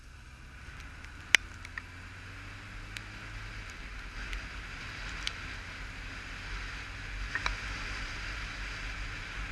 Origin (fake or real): real